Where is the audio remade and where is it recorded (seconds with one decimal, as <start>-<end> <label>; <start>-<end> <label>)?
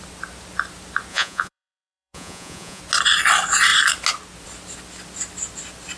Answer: 0.0-1.1 recorded; 1.1-2.8 remade; 2.8-6.0 recorded